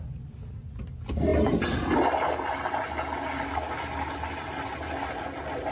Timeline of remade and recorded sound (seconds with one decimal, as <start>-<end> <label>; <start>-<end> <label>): 0.0-5.7 recorded